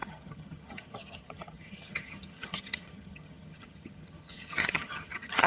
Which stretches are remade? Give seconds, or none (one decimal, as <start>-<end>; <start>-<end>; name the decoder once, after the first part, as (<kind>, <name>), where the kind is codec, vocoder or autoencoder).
0.0-5.5 (vocoder, HiFi-GAN)